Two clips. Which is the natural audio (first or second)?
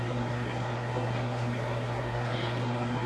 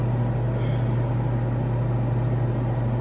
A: second